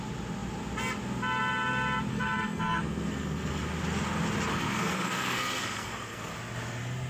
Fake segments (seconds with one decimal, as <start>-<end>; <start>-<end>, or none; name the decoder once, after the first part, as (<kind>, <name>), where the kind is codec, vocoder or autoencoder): 2.1-3.6 (codec, SNAC); 4.5-6.3